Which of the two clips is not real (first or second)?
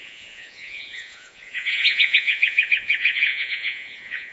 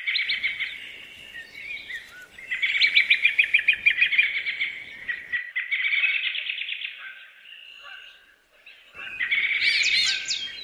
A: first